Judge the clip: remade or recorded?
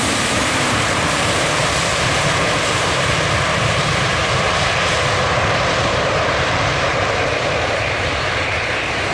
remade